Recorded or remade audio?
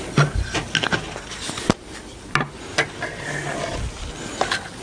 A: recorded